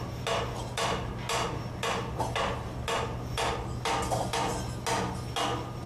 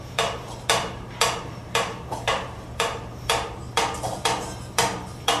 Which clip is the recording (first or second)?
first